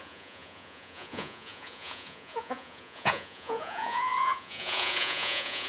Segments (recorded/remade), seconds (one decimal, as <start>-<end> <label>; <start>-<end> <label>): 0.0-5.7 remade